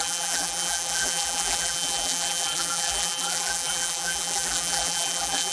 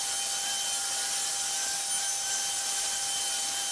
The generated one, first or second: first